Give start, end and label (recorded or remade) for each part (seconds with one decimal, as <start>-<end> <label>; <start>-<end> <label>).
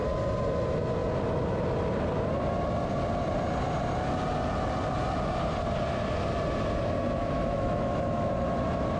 0.0-7.2 recorded; 7.2-8.3 remade; 8.3-9.0 recorded